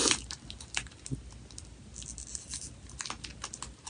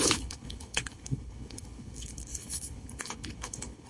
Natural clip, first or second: first